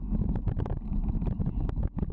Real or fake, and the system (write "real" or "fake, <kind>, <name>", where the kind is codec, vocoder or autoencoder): real